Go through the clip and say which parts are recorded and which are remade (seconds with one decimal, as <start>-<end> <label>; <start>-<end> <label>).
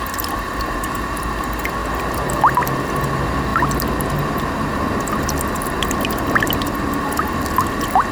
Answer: 0.0-8.1 recorded